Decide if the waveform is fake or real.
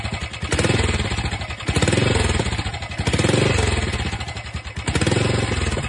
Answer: real